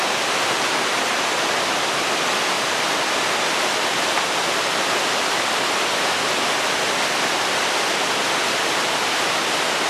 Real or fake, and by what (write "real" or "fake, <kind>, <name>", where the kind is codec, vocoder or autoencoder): real